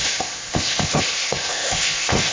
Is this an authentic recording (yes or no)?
no